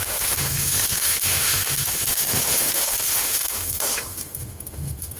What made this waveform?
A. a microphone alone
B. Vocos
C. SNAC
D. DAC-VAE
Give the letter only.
D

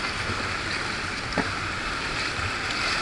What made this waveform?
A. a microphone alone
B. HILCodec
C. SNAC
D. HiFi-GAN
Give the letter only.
A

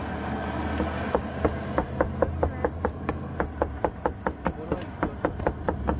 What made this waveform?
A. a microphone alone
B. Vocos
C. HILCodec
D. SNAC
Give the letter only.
A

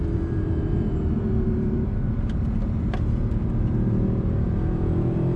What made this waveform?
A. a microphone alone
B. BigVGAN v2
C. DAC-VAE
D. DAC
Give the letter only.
B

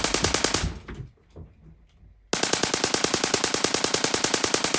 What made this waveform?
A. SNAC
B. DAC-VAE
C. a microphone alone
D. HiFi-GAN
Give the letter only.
C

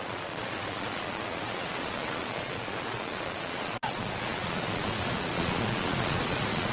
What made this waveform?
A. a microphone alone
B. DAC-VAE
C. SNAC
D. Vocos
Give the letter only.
D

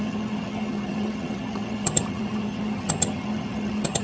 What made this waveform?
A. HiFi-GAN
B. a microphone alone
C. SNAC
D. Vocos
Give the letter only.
A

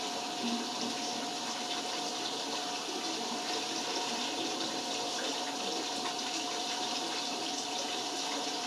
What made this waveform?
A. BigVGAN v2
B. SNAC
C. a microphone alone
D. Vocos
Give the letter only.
C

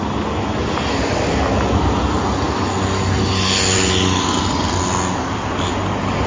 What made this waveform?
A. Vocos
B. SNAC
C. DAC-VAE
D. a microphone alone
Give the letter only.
D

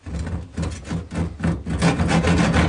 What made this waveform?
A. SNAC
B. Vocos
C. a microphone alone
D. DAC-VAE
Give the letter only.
C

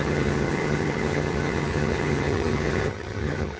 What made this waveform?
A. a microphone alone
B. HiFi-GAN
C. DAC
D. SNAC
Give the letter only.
B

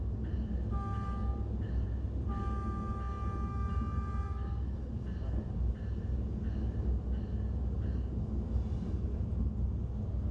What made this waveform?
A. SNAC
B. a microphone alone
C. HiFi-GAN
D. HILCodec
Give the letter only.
B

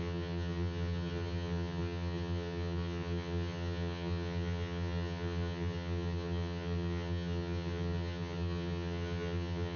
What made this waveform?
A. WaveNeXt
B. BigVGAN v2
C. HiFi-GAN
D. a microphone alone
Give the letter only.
C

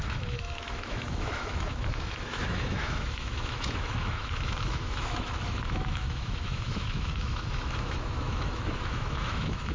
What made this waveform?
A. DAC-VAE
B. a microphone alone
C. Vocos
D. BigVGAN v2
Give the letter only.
A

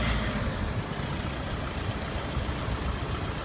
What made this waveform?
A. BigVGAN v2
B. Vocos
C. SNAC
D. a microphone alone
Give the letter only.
D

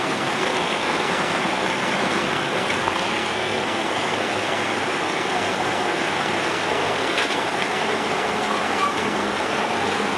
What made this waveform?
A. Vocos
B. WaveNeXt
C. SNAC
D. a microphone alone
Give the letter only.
C